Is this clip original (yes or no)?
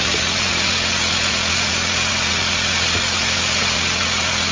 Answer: no